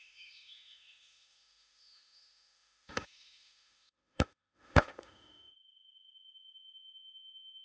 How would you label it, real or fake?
fake